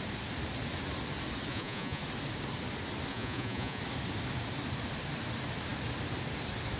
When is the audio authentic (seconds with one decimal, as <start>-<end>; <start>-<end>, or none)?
0.0-1.5; 2.0-3.1; 3.8-6.8